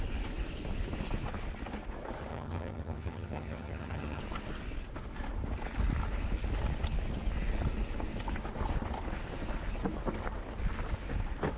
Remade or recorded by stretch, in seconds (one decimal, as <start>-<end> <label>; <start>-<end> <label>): 0.0-2.3 recorded; 2.3-4.2 remade; 4.2-11.6 recorded

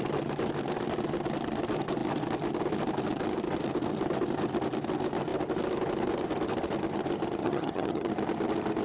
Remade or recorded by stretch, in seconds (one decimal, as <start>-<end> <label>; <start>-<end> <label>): 0.0-7.4 recorded; 7.4-8.1 remade; 8.1-8.8 recorded

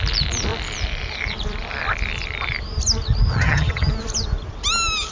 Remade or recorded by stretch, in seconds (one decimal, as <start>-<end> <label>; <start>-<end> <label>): 0.0-3.3 recorded; 3.3-3.9 remade; 3.9-5.1 recorded

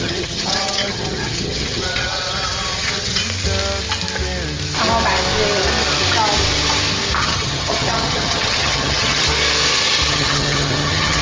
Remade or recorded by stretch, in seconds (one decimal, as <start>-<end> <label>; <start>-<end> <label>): 0.0-3.2 remade; 3.2-7.2 recorded; 7.2-9.2 remade; 9.2-10.1 recorded; 10.1-11.2 remade

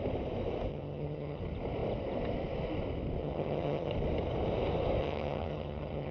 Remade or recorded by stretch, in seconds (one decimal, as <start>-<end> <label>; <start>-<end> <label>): 0.0-0.7 recorded; 0.7-1.4 remade; 1.4-3.2 recorded; 3.2-3.9 remade; 3.9-5.0 recorded; 5.0-6.1 remade

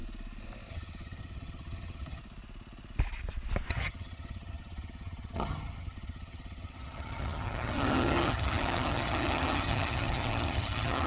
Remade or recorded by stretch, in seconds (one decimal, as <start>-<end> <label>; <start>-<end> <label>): 0.0-0.7 recorded; 0.7-2.2 remade; 2.2-3.7 recorded; 3.7-11.1 remade

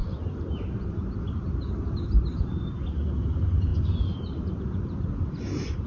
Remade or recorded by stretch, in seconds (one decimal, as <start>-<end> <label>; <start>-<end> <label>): 0.0-5.9 recorded